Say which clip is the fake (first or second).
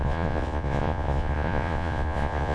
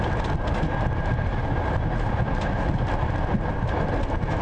first